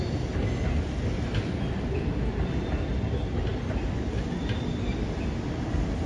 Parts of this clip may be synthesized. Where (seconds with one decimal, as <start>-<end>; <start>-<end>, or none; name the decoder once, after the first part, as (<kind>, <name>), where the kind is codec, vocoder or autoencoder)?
none